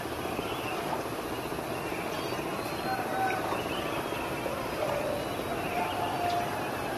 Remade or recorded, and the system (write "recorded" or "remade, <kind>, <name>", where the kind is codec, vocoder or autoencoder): recorded